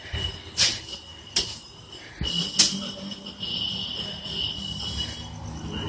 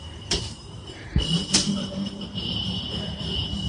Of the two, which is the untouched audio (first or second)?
first